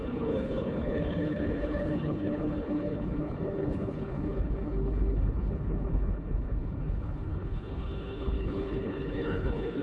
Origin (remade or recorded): remade